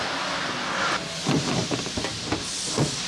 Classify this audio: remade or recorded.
recorded